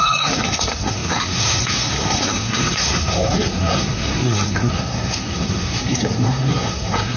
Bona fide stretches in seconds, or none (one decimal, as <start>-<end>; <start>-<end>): none